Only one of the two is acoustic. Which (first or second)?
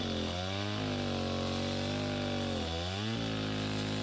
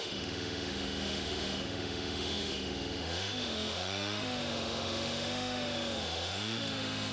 first